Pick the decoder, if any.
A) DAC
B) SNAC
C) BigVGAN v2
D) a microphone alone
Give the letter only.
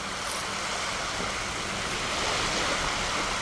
D